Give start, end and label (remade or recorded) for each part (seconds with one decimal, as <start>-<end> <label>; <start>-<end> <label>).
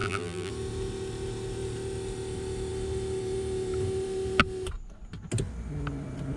0.0-0.5 remade; 0.5-6.4 recorded